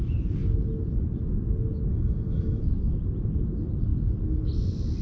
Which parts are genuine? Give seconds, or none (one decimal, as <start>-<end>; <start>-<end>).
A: 0.0-1.9; 2.6-5.0